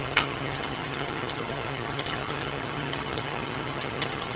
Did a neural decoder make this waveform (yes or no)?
yes